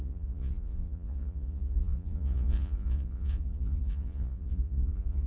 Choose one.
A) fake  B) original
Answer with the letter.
A